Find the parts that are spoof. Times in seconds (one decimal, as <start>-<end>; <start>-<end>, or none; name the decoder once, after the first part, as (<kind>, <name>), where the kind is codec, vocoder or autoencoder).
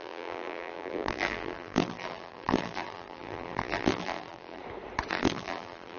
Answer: 0.0-4.6 (vocoder, BigVGAN v2); 5.1-6.0